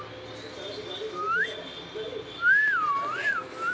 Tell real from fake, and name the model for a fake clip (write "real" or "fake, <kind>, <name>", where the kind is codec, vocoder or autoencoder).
real